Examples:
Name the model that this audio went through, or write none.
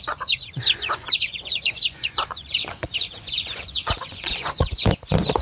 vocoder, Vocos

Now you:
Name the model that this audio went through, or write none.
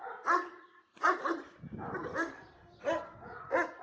none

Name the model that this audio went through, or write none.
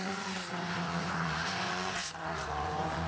vocoder, Vocos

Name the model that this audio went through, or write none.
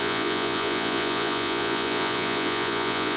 vocoder, Vocos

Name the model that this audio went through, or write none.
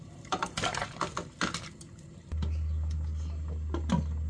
none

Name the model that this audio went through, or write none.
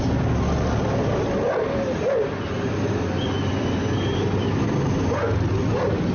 none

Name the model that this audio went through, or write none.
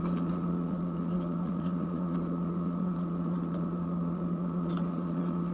vocoder, Vocos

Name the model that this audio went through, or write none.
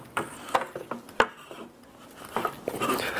none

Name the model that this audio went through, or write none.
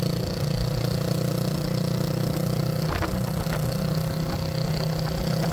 none